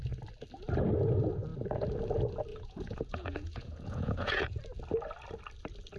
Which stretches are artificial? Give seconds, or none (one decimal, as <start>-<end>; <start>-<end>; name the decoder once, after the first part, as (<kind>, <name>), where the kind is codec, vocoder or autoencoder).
2.5-4.6 (vocoder, Vocos)